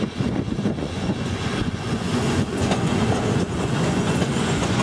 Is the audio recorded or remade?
remade